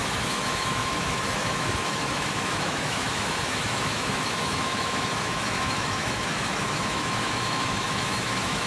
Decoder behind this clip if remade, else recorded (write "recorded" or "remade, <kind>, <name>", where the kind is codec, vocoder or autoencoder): remade, autoencoder, DAC-VAE